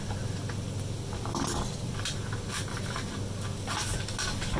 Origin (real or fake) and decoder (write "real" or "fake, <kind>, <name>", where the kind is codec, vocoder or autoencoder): real